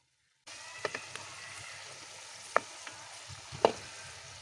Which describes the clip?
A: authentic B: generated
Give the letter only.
A